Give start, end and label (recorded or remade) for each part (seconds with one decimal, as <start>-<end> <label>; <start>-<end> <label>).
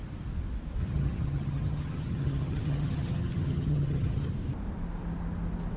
0.0-0.8 recorded; 0.8-4.3 remade; 4.3-5.8 recorded